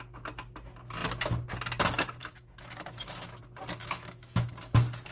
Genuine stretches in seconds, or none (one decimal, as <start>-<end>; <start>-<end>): 0.0-2.2; 3.4-3.8; 4.5-5.1